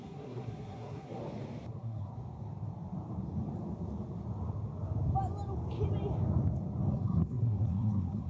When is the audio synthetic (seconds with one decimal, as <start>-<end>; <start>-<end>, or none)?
0.0-1.2; 1.7-2.1; 6.9-8.3